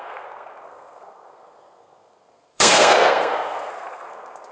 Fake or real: fake